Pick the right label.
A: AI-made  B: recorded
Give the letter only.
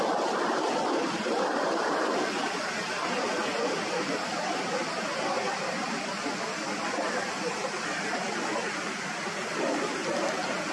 B